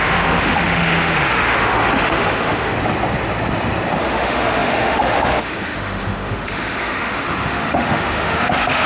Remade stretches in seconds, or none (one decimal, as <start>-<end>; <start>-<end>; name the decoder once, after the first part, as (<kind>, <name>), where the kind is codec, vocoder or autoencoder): 0.0-2.7 (autoencoder, DAC-VAE); 4.0-8.9